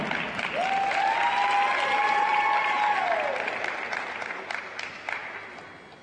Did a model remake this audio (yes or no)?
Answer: no